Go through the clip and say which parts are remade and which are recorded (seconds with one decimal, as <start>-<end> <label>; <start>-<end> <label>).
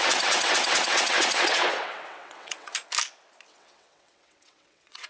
0.0-2.7 remade; 2.7-3.5 recorded; 3.5-5.1 remade